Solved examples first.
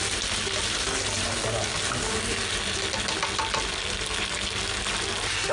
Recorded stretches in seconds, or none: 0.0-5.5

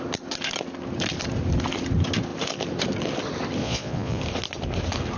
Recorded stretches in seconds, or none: 0.0-3.6; 4.2-5.2

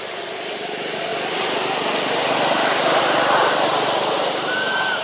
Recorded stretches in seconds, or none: 0.0-5.0

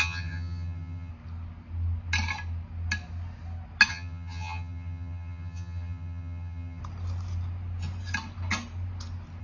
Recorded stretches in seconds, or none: 1.1-3.9; 6.8-9.4

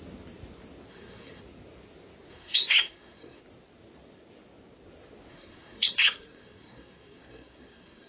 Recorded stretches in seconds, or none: 0.0-0.9; 1.4-2.3; 3.4-5.3

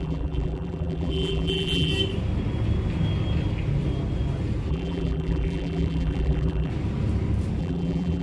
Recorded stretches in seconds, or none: 1.9-4.7; 6.7-7.6